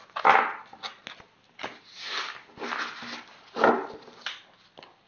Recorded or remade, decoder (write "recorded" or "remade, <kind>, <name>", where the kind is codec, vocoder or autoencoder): recorded